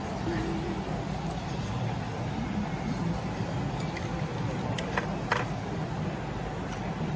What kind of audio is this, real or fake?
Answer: real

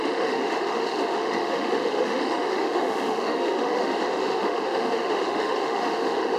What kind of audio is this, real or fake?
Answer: fake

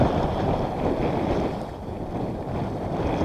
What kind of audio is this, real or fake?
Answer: real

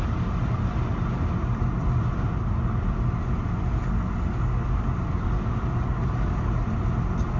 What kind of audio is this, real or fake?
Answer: real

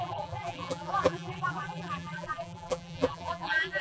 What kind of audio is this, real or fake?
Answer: fake